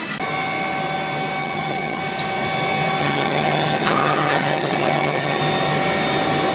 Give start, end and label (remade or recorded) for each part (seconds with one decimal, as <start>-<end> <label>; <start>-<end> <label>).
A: 0.0-1.4 recorded; 1.4-2.0 remade; 2.0-3.0 recorded; 3.0-5.4 remade; 5.4-6.5 recorded